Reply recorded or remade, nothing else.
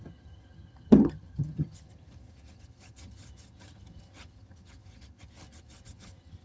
remade